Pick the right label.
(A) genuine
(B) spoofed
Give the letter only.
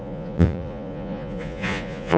B